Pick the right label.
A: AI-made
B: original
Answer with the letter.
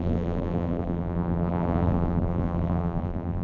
A